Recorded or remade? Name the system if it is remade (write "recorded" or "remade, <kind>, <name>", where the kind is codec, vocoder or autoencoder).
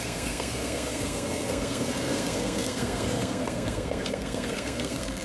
remade, codec, SNAC